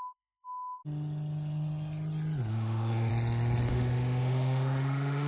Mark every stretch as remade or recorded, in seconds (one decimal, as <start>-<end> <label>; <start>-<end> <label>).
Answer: 0.0-0.8 remade; 0.8-2.5 recorded; 2.5-3.1 remade; 3.1-3.7 recorded; 3.7-5.3 remade